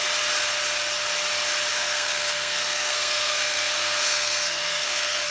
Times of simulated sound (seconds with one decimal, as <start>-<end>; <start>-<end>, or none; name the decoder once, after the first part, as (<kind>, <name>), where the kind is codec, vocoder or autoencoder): 1.7-5.3 (codec, SNAC)